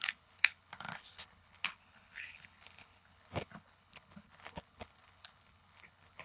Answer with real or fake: fake